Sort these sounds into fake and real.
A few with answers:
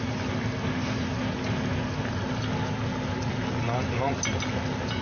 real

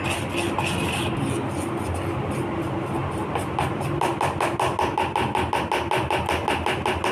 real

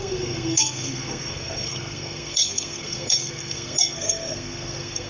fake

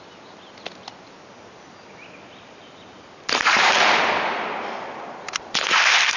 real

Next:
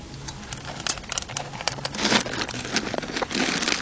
real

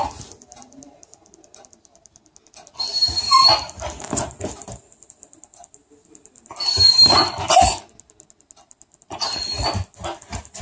real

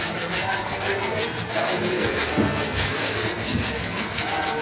fake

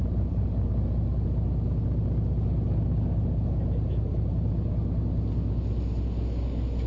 real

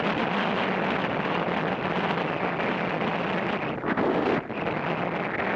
real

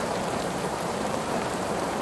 fake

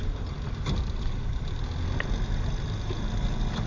real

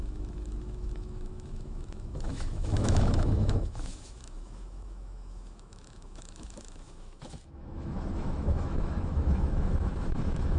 fake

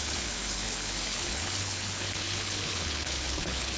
fake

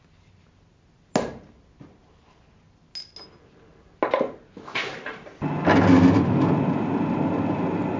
real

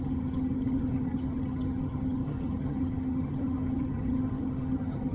fake